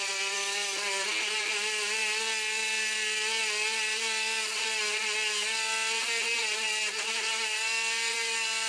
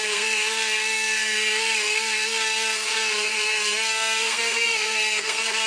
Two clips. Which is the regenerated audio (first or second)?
second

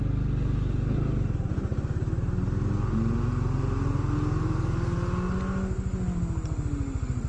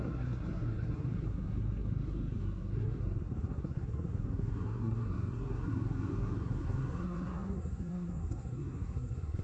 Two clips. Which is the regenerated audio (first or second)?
second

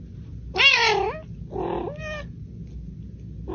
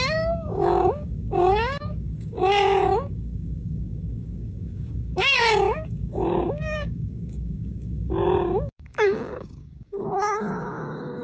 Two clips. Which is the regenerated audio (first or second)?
second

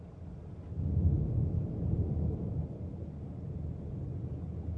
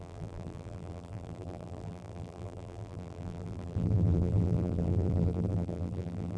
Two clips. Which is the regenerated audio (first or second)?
second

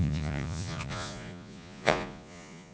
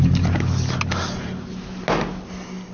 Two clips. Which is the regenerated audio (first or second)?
first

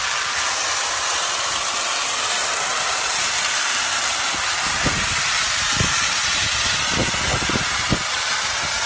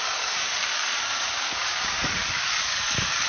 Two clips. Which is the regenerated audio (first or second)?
second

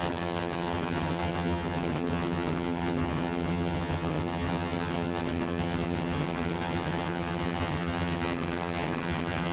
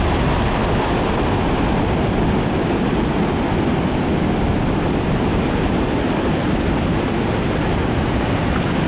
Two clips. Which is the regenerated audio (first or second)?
first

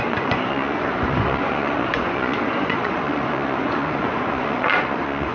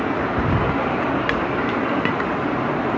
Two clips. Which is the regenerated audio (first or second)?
first